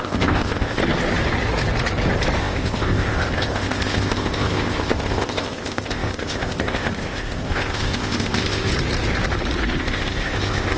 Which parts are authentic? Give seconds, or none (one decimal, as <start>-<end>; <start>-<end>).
0.8-2.4; 8.7-9.8